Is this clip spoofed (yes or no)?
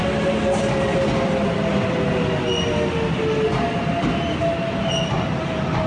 no